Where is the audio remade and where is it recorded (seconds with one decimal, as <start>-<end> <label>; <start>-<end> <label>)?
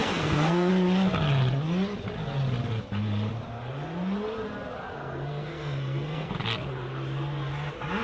0.0-0.7 remade; 0.7-4.9 recorded; 4.9-6.3 remade; 6.3-8.0 recorded